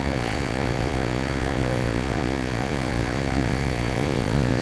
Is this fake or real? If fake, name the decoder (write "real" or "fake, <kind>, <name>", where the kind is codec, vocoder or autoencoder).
fake, vocoder, Vocos